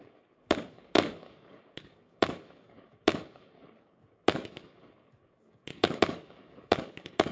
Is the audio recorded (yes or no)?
no